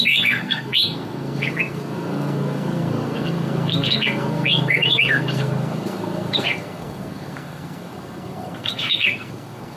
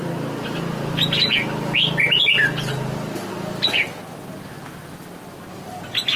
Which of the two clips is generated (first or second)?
first